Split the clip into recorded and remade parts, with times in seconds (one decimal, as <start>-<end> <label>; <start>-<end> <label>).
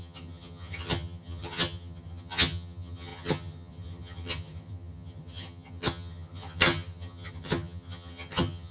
0.0-8.7 remade